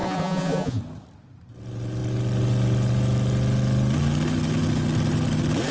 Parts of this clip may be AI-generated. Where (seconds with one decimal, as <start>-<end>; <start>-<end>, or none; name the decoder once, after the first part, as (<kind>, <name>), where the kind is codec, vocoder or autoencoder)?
0.0-0.8 (vocoder, Vocos)